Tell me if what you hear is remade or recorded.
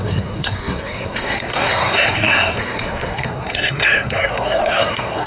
remade